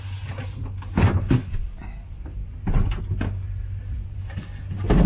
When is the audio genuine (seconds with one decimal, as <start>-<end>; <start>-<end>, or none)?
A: 0.0-5.1